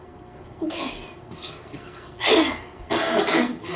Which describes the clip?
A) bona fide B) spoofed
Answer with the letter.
B